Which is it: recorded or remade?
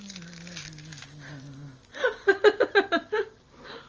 recorded